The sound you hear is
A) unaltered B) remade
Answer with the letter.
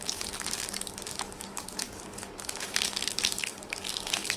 B